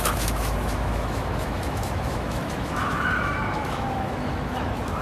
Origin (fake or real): fake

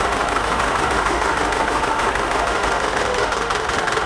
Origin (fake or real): fake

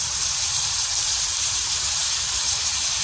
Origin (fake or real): fake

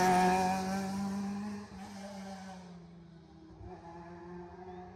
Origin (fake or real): real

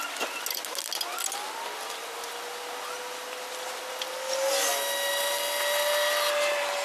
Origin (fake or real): real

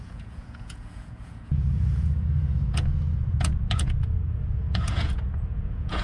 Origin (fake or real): fake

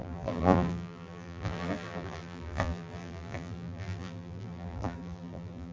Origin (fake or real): fake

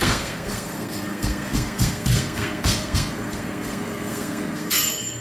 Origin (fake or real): fake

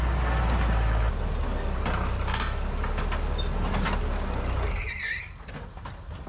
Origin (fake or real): real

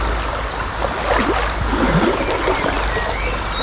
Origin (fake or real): real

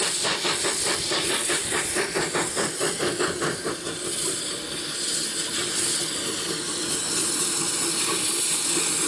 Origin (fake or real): real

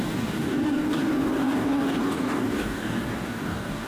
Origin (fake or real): fake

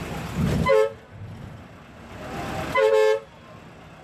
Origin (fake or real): real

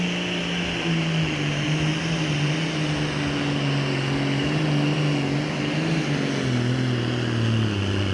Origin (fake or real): real